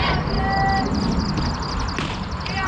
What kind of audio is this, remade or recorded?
recorded